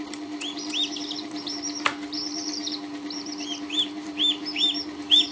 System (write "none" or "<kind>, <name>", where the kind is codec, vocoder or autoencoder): vocoder, BigVGAN v2